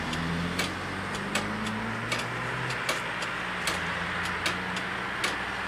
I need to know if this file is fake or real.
real